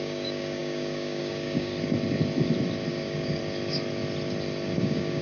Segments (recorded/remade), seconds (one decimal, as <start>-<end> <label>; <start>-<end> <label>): 0.0-1.7 remade; 1.7-2.9 recorded; 2.9-3.4 remade; 3.4-4.8 recorded; 4.8-5.2 remade